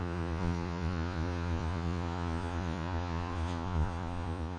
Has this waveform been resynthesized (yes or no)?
yes